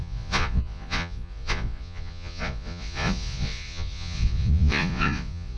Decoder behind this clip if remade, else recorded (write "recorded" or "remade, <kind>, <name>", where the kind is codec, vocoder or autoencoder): remade, vocoder, Vocos